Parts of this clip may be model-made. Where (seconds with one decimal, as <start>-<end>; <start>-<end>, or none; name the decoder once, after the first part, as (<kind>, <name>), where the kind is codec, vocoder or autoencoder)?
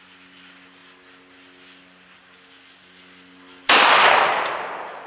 none